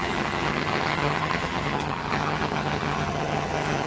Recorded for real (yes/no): no